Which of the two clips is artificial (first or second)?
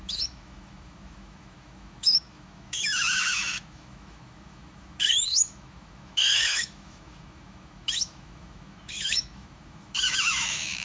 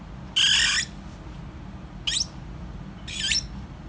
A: first